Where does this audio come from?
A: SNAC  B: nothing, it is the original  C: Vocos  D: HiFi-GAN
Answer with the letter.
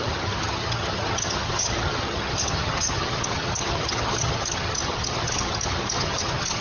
D